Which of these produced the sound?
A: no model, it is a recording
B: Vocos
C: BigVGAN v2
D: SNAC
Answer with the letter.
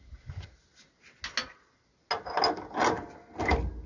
A